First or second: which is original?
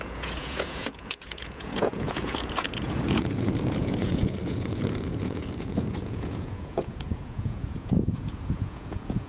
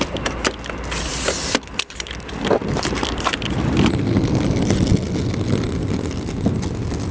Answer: second